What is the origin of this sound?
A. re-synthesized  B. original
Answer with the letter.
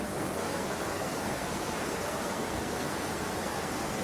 A